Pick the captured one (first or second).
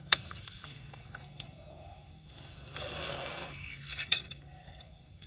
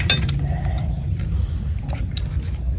second